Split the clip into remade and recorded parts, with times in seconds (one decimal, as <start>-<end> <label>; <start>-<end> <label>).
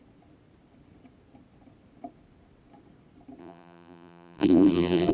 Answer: 0.0-3.4 recorded; 3.4-5.1 remade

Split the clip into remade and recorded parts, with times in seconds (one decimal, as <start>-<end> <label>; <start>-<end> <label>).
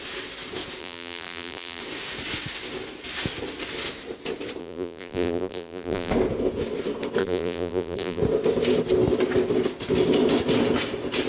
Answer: 0.0-0.8 recorded; 0.8-1.8 remade; 1.8-4.6 recorded; 4.6-6.1 remade; 6.1-7.2 recorded; 7.2-8.2 remade; 8.2-11.3 recorded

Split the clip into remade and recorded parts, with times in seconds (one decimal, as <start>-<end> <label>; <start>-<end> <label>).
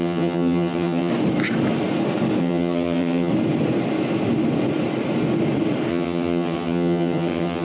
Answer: 0.0-1.1 remade; 1.1-2.4 recorded; 2.4-3.3 remade; 3.3-5.9 recorded; 5.9-7.6 remade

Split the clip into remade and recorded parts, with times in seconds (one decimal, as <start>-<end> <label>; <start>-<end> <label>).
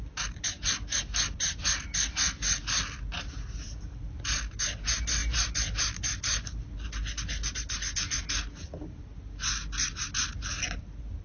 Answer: 0.0-11.2 recorded